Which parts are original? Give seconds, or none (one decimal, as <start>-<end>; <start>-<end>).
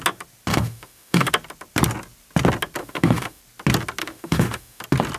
0.0-0.5; 1.3-2.8; 3.4-4.0; 4.8-5.2